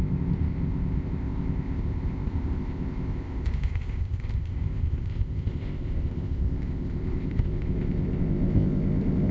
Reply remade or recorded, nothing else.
remade